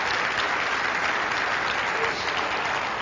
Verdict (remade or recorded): recorded